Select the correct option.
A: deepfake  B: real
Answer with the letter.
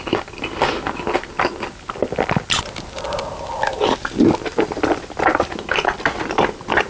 B